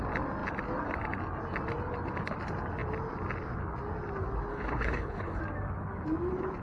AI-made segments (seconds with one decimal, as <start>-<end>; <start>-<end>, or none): 4.5-5.4